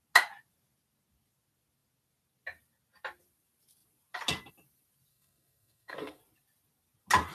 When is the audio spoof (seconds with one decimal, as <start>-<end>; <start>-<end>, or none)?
5.1-6.2

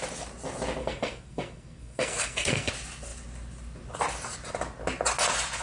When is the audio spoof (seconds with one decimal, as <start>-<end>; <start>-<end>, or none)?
0.8-2.7